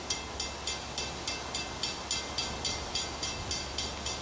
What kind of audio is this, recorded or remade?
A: recorded